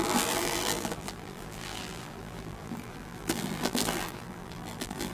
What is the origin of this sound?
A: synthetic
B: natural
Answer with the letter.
A